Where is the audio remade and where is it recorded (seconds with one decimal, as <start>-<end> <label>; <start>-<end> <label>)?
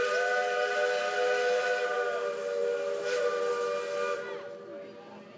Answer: 0.0-5.4 recorded